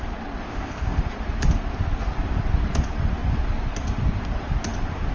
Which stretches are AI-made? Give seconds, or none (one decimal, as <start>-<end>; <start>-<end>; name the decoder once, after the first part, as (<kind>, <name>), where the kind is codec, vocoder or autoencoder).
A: 0.5-1.0 (codec, ZipCodec)